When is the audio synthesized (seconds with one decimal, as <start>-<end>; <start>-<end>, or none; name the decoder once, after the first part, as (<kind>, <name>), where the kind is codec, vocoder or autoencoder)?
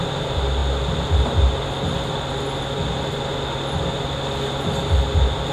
none